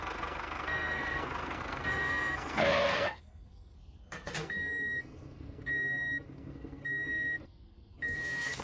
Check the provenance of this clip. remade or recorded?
remade